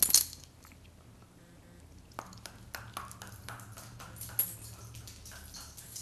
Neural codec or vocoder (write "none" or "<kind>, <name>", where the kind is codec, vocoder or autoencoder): none